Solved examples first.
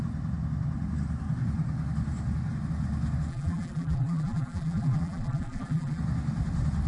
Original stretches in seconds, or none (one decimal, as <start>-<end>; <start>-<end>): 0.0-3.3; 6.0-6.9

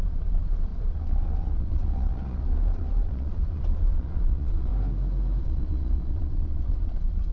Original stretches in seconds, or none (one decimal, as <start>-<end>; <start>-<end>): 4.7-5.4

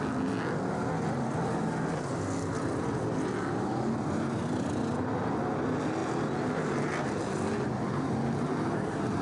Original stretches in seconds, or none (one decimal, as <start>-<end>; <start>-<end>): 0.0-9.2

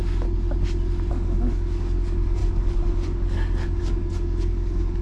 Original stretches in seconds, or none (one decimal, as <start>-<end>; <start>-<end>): 0.0-1.1

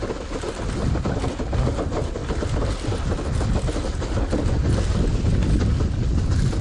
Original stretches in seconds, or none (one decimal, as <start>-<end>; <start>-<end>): 0.0-6.6